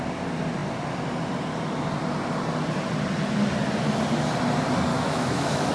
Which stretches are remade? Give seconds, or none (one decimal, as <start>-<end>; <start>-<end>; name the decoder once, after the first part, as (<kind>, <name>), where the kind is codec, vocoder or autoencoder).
4.9-5.7 (autoencoder, DAC-VAE)